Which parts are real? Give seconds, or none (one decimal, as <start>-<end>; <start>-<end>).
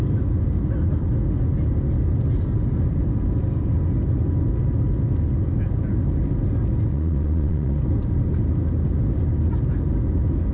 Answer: 0.0-6.9; 7.8-10.5